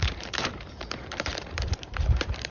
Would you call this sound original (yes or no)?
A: no